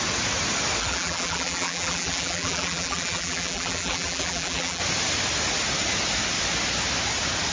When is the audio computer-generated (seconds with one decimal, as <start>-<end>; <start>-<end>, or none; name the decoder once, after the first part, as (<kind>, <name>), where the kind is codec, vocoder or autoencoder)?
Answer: 0.8-4.8 (vocoder, BigVGAN v2)